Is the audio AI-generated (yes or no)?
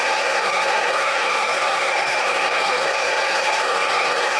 yes